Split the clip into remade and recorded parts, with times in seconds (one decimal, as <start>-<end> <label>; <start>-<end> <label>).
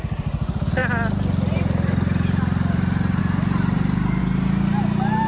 0.0-4.2 remade; 4.2-5.3 recorded